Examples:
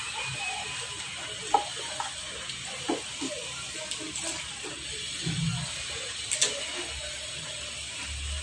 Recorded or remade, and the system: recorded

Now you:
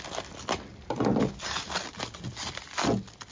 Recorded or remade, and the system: recorded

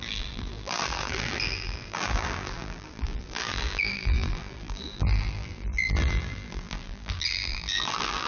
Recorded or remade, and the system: remade, vocoder, BigVGAN v2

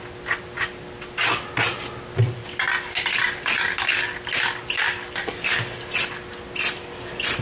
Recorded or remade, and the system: recorded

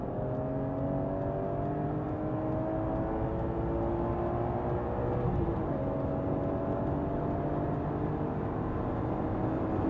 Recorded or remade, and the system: recorded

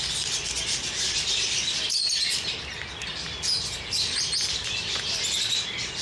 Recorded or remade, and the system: recorded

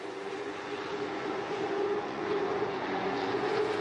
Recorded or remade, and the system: remade, vocoder, Vocos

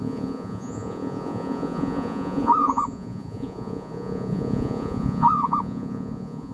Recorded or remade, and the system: remade, vocoder, Vocos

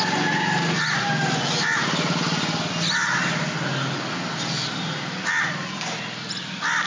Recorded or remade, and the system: recorded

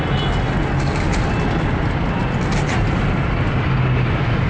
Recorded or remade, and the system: recorded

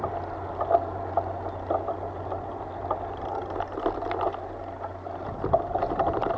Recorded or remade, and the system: recorded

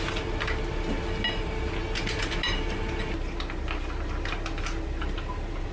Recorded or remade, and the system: recorded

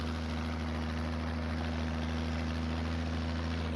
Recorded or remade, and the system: recorded